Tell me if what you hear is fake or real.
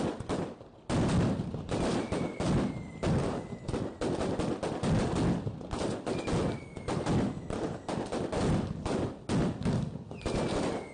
real